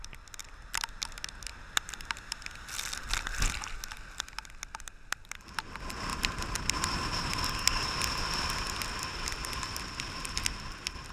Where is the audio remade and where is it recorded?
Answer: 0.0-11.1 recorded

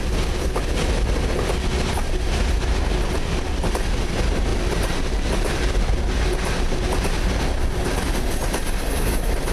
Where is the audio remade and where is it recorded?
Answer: 0.0-4.5 recorded; 4.5-6.0 remade; 6.0-9.5 recorded

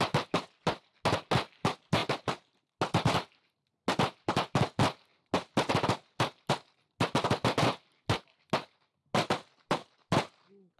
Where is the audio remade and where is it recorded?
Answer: 0.0-10.8 recorded

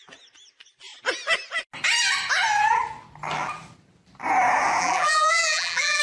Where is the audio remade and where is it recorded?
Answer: 0.0-4.8 recorded; 4.8-6.0 remade

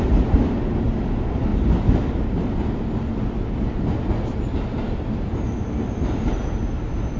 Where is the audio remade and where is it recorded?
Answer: 0.0-7.2 recorded

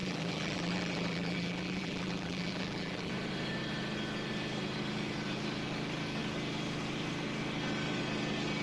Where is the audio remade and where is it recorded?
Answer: 0.0-3.1 remade; 3.1-8.6 recorded

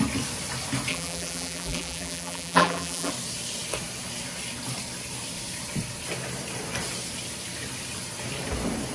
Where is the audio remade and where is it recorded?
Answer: 0.0-0.9 recorded; 0.9-3.1 remade; 3.1-8.9 recorded

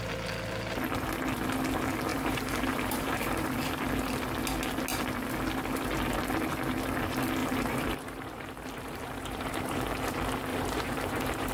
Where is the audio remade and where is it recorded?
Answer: 0.0-2.1 recorded; 2.1-3.2 remade; 3.2-7.4 recorded; 7.4-9.8 remade; 9.8-10.5 recorded; 10.5-11.5 remade